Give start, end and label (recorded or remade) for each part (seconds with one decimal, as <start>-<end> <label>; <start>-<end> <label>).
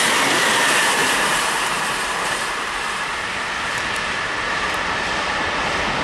0.0-1.0 recorded; 1.0-4.3 remade; 4.3-6.0 recorded